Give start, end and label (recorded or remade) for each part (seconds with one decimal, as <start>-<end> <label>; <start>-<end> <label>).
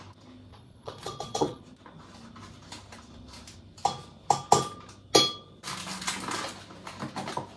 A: 0.0-0.5 recorded; 0.5-1.6 remade; 1.6-7.6 recorded